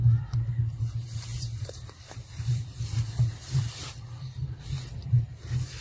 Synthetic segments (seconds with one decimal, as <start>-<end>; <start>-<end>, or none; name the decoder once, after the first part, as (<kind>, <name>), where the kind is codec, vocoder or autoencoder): 1.3-4.6 (vocoder, BigVGAN v2); 5.0-5.8